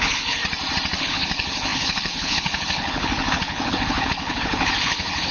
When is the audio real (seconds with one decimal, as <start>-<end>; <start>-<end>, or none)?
0.4-1.0